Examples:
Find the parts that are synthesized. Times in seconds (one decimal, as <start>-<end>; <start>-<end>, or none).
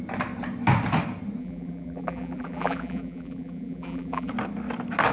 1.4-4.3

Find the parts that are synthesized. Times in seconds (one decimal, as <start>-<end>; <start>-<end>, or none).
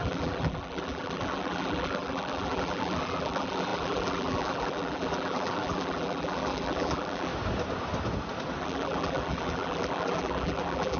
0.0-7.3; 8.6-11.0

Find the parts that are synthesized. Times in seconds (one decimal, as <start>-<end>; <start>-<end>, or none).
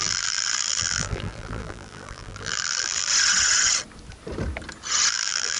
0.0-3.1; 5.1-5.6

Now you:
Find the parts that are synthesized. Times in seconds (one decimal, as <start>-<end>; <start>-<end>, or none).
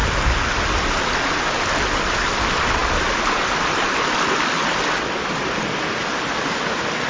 none